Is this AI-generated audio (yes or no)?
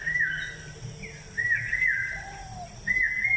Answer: no